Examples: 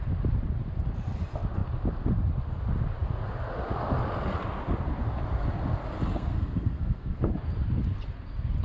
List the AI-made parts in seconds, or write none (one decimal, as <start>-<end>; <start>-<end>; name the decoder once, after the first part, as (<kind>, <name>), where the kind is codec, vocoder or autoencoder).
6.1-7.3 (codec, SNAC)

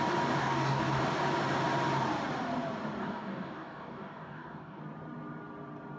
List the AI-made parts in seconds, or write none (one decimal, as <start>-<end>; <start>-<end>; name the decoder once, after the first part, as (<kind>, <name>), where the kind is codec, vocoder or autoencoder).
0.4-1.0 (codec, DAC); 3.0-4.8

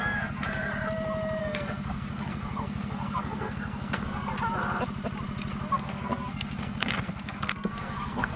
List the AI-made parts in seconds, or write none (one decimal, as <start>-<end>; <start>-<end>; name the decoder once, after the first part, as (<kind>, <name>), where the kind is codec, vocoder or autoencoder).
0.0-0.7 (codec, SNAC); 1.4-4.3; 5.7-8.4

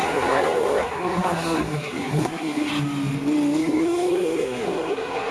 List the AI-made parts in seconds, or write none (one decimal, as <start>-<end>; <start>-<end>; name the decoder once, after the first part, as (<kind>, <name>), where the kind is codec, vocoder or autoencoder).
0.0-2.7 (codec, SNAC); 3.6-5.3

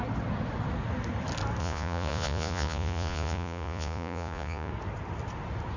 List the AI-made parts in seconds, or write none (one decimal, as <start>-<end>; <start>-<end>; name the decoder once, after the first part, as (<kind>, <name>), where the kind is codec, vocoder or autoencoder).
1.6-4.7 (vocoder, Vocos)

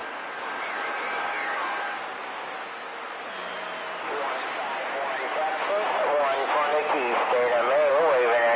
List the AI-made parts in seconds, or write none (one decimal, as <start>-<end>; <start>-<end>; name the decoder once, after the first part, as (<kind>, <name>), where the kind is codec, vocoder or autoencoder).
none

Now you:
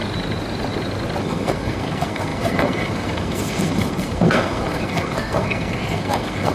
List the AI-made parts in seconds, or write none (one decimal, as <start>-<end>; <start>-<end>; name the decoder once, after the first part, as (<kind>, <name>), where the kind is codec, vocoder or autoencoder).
1.2-6.5 (codec, SNAC)

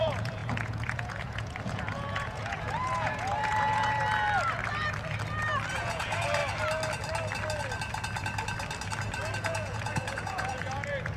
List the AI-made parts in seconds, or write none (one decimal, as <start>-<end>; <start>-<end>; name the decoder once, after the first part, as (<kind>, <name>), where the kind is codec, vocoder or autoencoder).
0.0-4.0 (vocoder, Vocos); 5.7-6.4; 9.4-11.2